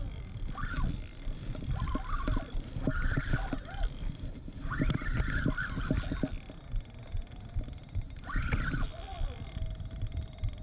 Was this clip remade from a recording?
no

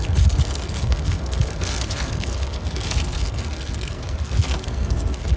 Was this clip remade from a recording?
yes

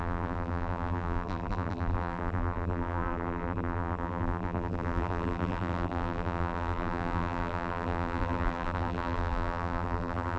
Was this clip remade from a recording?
yes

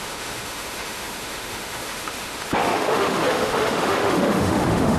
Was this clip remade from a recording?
yes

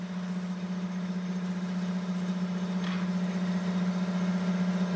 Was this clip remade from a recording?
no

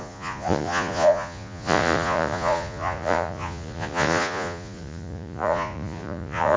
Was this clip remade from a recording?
yes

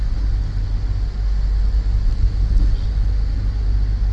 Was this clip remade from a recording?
no